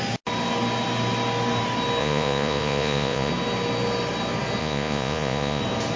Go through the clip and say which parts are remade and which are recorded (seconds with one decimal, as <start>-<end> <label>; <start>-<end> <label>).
0.0-2.0 recorded; 2.0-3.3 remade; 3.3-4.6 recorded; 4.6-5.6 remade; 5.6-6.0 recorded